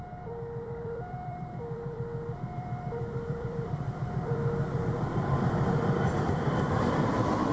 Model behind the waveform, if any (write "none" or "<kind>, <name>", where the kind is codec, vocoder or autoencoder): vocoder, BigVGAN v2